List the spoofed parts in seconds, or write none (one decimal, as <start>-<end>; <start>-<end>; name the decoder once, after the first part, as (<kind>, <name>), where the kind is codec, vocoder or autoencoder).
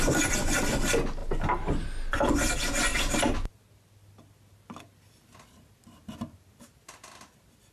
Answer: none